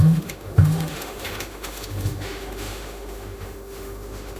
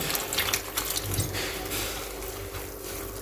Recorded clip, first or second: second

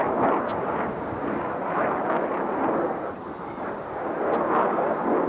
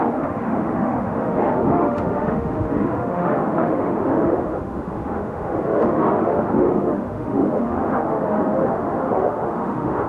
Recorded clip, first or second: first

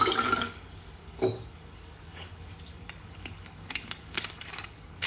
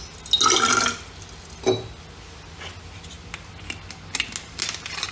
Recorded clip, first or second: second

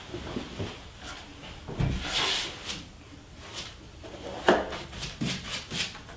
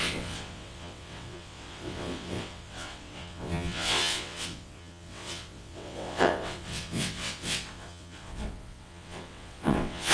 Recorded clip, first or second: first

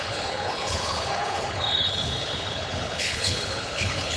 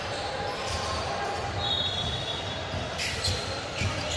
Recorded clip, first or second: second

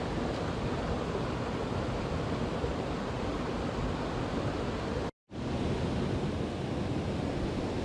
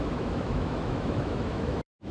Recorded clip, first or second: first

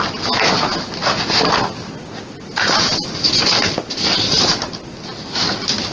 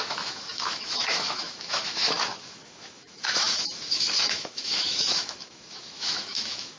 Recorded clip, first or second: first